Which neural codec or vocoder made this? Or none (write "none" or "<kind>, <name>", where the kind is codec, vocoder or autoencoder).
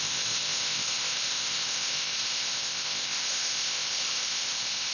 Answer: codec, ZipCodec